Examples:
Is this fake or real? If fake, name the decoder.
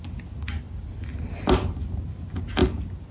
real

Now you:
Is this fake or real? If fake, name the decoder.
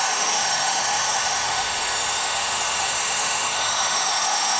fake, autoencoder, DAC-VAE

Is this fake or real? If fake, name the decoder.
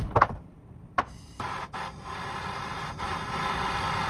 real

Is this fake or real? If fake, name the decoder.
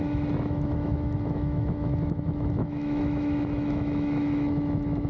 fake, autoencoder, DAC-VAE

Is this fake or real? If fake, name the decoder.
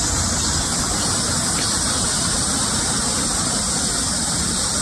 real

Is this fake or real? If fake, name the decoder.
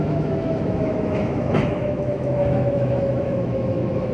fake, autoencoder, DAC-VAE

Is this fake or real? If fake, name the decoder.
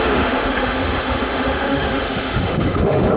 fake, autoencoder, DAC-VAE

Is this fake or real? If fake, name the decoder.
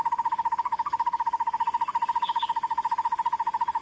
real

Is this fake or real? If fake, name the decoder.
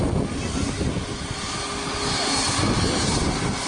real